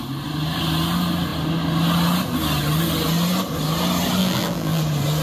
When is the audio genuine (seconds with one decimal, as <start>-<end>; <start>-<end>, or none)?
0.0-4.2; 4.8-5.2